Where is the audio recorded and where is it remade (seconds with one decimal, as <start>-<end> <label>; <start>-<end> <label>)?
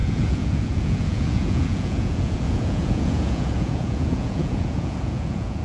0.0-5.6 remade